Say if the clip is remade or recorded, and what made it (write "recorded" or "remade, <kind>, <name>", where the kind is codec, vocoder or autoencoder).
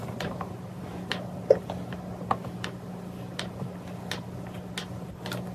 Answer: recorded